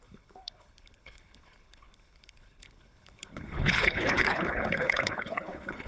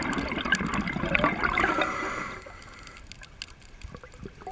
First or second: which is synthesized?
first